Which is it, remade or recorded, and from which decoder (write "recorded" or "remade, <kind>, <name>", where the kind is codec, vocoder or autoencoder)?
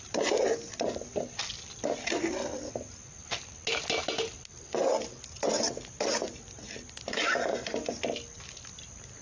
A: recorded